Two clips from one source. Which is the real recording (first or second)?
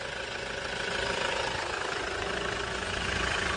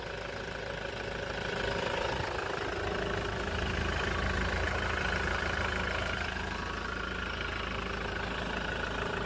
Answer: second